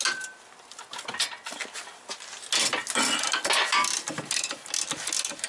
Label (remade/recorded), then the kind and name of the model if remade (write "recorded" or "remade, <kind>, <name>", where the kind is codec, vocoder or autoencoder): recorded